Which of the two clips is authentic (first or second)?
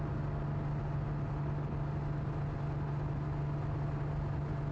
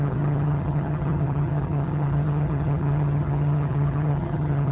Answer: first